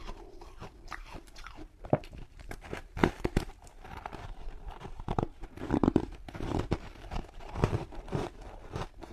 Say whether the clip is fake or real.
fake